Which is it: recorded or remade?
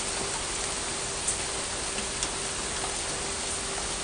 recorded